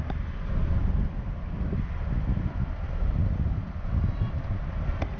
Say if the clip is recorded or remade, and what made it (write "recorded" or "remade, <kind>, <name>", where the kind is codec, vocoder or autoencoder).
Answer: recorded